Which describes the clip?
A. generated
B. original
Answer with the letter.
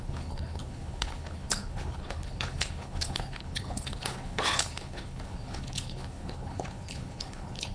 A